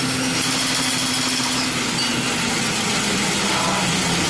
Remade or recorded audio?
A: recorded